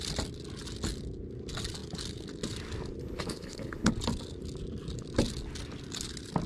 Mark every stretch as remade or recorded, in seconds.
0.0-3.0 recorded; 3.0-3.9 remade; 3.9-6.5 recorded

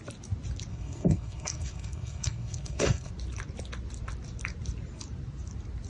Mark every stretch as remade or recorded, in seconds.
0.0-0.7 recorded; 0.7-3.1 remade; 3.1-5.9 recorded

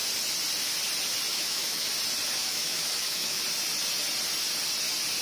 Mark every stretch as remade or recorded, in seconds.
0.0-1.3 recorded; 1.3-1.9 remade; 1.9-2.4 recorded; 2.4-3.4 remade; 3.4-5.2 recorded

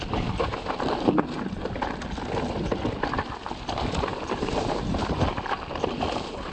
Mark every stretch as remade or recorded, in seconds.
0.0-6.5 recorded

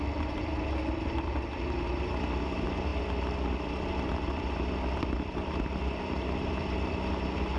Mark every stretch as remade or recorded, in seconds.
0.0-7.6 recorded